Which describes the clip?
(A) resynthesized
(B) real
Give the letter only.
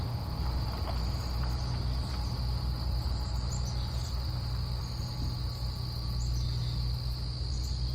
B